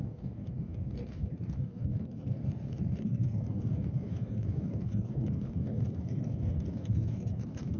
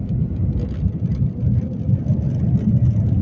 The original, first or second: second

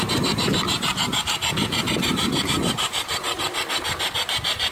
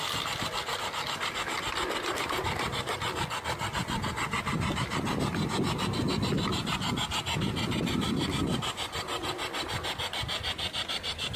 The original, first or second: second